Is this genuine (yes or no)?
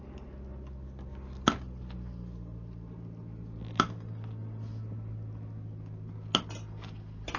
yes